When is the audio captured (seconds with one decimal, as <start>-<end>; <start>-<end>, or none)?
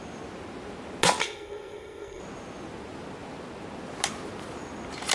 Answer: 0.0-1.2; 2.2-5.1